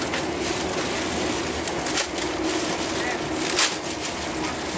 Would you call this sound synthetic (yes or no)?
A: no